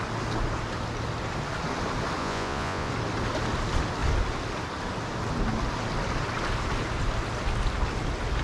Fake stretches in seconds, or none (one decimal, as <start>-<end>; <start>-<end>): 2.2-2.9